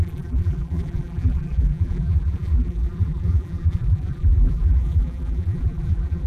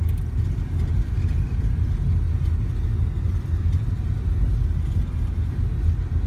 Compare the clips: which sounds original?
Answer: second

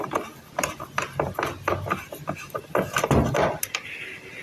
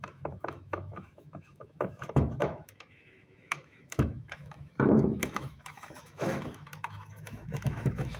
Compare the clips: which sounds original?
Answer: first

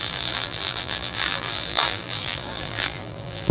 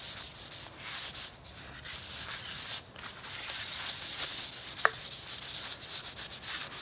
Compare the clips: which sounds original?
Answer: second